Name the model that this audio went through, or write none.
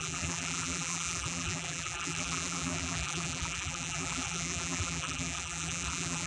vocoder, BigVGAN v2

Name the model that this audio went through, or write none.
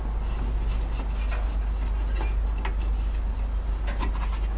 none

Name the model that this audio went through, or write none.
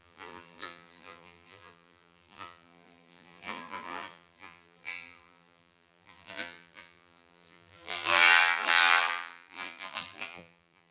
vocoder, BigVGAN v2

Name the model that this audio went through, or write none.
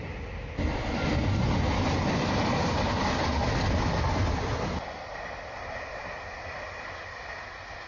none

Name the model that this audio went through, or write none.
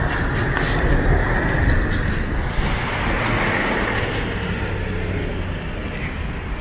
none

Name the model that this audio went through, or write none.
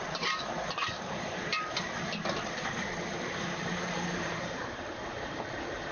vocoder, BigVGAN v2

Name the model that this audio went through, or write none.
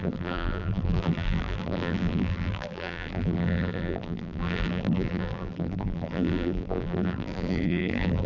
vocoder, BigVGAN v2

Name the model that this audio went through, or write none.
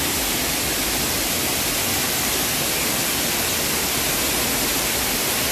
none